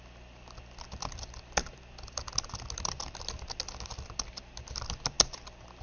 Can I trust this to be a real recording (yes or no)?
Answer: yes